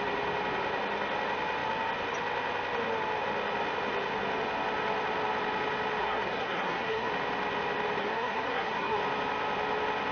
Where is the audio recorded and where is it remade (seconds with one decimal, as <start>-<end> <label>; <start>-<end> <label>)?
0.0-6.0 recorded; 6.0-7.1 remade; 7.1-8.0 recorded; 8.0-9.0 remade; 9.0-10.1 recorded